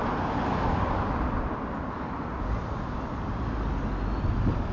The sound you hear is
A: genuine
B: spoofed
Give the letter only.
A